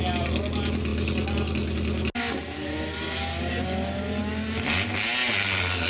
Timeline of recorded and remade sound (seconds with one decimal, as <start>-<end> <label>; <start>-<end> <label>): 0.0-5.9 recorded